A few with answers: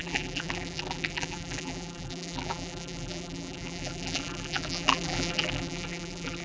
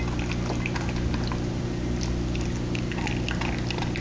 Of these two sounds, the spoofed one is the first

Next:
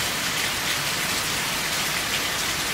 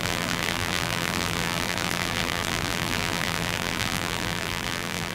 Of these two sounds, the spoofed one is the second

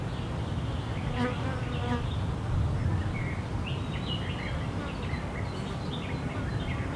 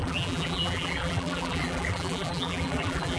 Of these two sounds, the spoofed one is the second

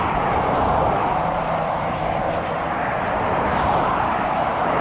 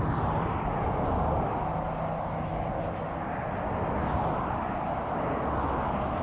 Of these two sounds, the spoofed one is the first